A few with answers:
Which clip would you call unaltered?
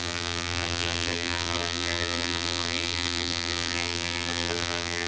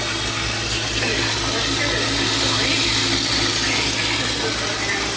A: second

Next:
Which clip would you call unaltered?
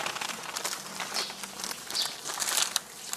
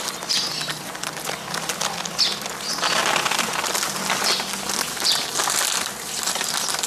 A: second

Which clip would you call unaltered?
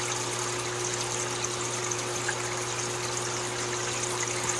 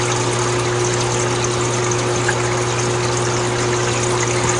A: second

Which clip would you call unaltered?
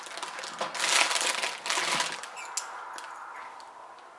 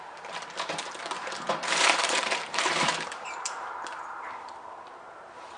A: first